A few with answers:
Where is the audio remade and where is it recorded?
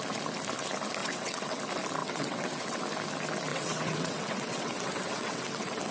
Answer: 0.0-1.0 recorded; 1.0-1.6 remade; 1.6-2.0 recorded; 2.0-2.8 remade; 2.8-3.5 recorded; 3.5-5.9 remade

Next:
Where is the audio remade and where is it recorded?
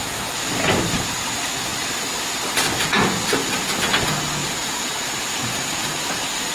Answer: 0.0-4.4 recorded; 4.4-5.7 remade; 5.7-6.5 recorded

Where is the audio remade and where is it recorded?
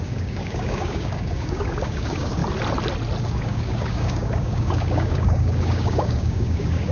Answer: 0.0-2.4 remade; 2.4-3.2 recorded; 3.2-6.9 remade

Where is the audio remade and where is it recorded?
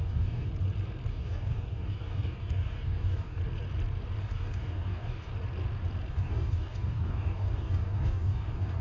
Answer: 0.0-0.5 remade; 0.5-1.1 recorded; 1.1-3.4 remade; 3.4-4.2 recorded; 4.2-5.3 remade; 5.3-6.1 recorded; 6.1-8.8 remade